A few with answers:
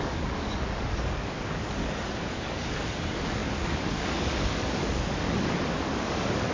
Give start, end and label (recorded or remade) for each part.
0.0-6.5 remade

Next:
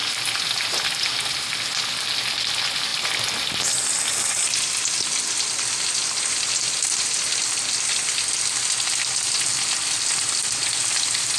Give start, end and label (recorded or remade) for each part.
0.0-11.4 recorded

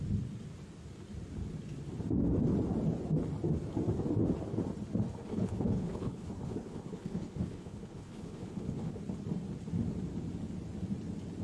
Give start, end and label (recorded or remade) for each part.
0.0-5.2 recorded; 5.2-9.0 remade; 9.0-11.4 recorded

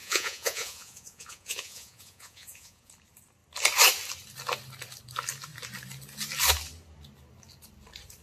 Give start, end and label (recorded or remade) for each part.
0.0-2.9 remade; 2.9-8.2 recorded

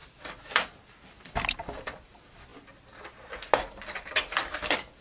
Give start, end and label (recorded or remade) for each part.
0.0-2.5 remade; 2.5-3.6 recorded; 3.6-5.0 remade

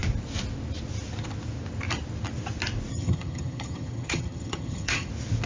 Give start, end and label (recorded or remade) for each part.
0.0-2.9 recorded; 2.9-5.1 remade; 5.1-5.5 recorded